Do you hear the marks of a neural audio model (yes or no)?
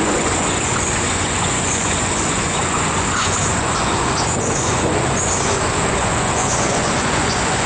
yes